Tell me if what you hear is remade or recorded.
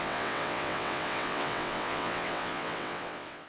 remade